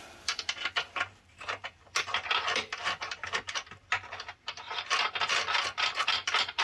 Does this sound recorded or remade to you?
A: recorded